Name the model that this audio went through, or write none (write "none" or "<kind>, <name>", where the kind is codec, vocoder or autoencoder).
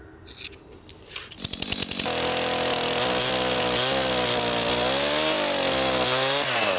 none